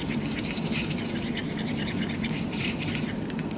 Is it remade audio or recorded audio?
remade